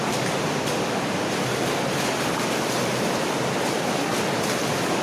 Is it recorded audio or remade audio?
recorded